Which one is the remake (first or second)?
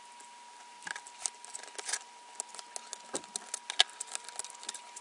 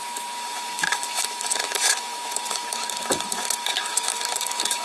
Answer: second